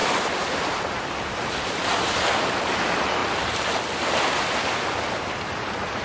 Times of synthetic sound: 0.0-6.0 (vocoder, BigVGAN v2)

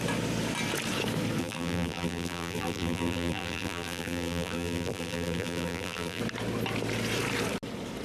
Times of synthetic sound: 1.4-6.2 (vocoder, BigVGAN v2)